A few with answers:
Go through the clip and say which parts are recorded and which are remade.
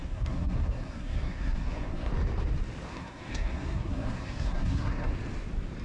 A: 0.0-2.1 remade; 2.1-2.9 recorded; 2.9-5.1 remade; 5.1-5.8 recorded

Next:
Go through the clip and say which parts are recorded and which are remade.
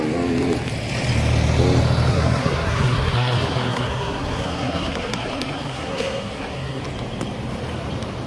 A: 0.0-2.1 recorded; 2.1-6.8 remade; 6.8-8.3 recorded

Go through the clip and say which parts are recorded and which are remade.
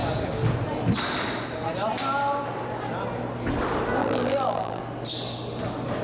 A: 0.0-4.0 recorded; 4.0-4.8 remade; 4.8-6.0 recorded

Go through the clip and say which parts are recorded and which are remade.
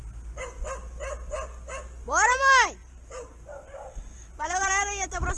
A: 0.0-2.8 recorded; 2.8-4.7 remade; 4.7-5.4 recorded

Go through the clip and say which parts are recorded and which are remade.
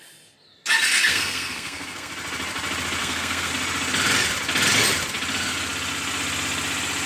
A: 0.0-1.1 recorded; 1.1-2.1 remade; 2.1-3.0 recorded; 3.0-3.5 remade; 3.5-7.1 recorded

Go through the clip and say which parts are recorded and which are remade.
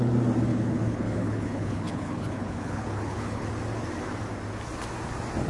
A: 0.0-0.5 recorded; 0.5-3.5 remade; 3.5-5.5 recorded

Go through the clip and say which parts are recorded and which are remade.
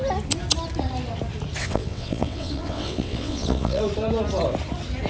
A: 0.0-1.6 recorded; 1.6-3.8 remade; 3.8-5.1 recorded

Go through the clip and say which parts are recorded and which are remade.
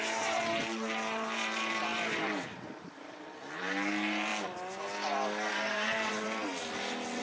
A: 0.0-4.3 remade; 4.3-5.5 recorded; 5.5-6.4 remade; 6.4-7.2 recorded